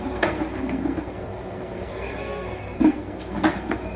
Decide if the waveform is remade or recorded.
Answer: remade